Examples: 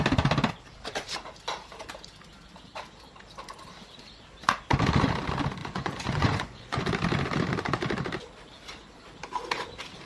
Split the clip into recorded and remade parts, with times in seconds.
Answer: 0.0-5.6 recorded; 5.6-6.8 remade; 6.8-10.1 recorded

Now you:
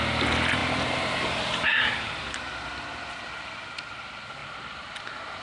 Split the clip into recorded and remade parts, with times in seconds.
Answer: 0.0-1.7 recorded; 1.7-2.4 remade; 2.4-4.4 recorded; 4.4-5.0 remade; 5.0-5.4 recorded

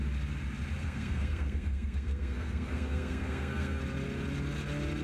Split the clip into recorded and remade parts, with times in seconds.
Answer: 0.0-0.8 recorded; 0.8-3.8 remade; 3.8-5.0 recorded

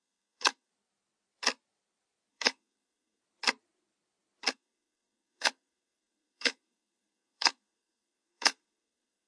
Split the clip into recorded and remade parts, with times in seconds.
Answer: 0.0-0.7 remade; 0.7-2.3 recorded; 2.3-3.2 remade; 3.2-4.5 recorded; 4.5-9.3 remade

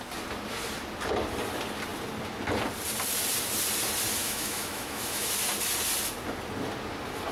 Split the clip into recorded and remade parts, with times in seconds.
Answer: 0.0-4.2 recorded; 4.2-5.3 remade; 5.3-7.3 recorded

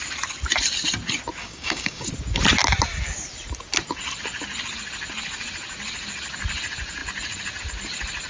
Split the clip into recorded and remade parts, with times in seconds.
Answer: 0.0-1.4 recorded; 1.4-2.1 remade; 2.1-8.3 recorded